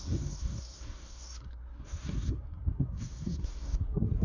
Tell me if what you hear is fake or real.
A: fake